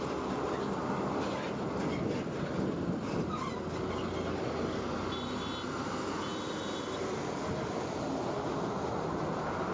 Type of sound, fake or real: real